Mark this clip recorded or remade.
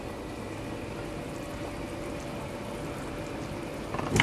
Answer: recorded